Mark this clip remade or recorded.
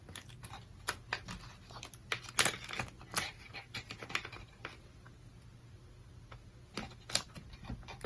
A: recorded